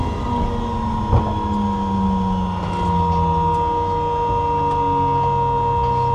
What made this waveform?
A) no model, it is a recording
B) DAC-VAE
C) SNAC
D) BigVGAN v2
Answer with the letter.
A